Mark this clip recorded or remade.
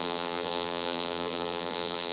remade